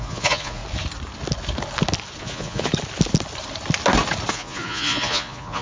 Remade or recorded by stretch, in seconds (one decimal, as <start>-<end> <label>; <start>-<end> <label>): 0.0-0.6 remade; 0.6-2.2 recorded; 2.2-2.7 remade; 2.7-4.3 recorded; 4.3-5.6 remade